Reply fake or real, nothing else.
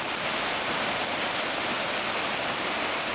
real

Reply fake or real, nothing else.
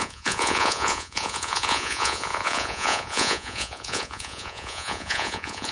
fake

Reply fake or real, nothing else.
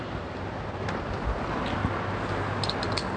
real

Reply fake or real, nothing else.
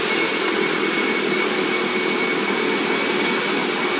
real